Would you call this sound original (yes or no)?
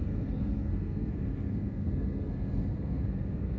no